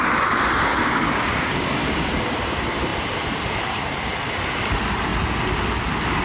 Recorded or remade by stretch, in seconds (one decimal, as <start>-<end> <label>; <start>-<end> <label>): 0.0-0.7 recorded; 0.7-2.1 remade; 2.1-6.2 recorded